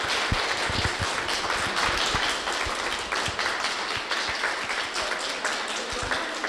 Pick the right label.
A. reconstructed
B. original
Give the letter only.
B